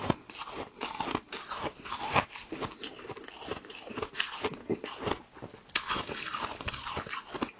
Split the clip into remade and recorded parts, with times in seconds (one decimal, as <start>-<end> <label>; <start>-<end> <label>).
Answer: 0.0-1.4 recorded; 1.4-1.9 remade; 1.9-7.6 recorded